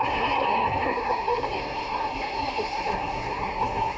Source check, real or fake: fake